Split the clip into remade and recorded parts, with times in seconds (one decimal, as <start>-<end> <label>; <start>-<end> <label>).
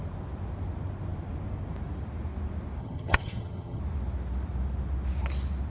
0.0-2.8 recorded; 2.8-3.8 remade; 3.8-5.7 recorded